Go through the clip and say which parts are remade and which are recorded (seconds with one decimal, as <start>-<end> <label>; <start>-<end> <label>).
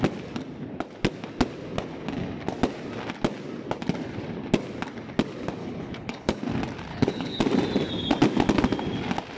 0.0-5.6 recorded; 5.6-6.4 remade; 6.4-6.9 recorded; 6.9-7.4 remade; 7.4-9.4 recorded